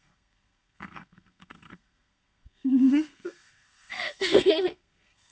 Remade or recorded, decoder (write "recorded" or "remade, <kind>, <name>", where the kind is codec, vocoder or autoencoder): remade, codec, SNAC